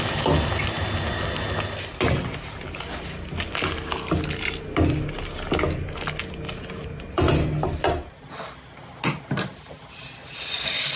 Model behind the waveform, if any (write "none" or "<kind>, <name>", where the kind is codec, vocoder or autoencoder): none